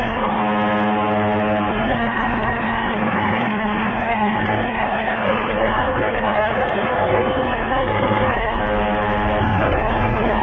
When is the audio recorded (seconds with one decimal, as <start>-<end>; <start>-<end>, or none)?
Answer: 0.4-1.7; 8.6-9.4